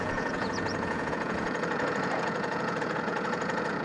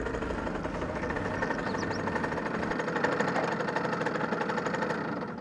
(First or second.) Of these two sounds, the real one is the second